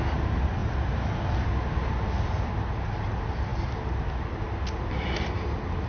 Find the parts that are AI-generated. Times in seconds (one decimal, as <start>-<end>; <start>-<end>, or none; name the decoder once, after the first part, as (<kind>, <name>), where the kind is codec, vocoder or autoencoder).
none